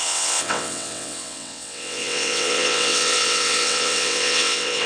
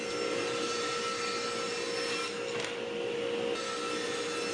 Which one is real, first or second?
second